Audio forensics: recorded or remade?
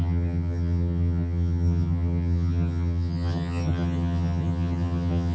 remade